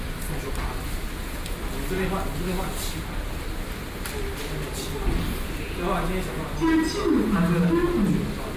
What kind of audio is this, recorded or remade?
recorded